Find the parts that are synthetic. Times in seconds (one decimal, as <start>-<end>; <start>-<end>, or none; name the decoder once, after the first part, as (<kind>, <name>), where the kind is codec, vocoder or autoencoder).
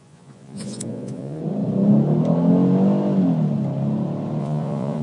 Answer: 0.0-1.4 (vocoder, Vocos); 4.4-5.0